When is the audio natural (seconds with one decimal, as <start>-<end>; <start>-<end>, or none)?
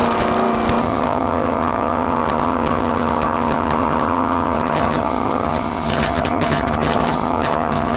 0.0-0.8